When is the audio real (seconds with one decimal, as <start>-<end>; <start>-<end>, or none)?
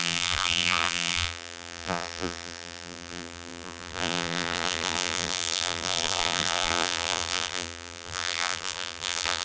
none